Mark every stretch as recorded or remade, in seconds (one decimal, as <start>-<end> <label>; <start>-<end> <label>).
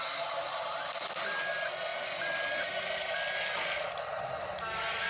0.0-5.1 recorded